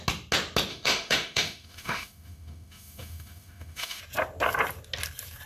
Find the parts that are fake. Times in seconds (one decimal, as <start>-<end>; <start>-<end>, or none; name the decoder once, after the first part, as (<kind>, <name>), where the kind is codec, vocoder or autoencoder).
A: 0.7-4.0 (autoencoder, DAC-VAE)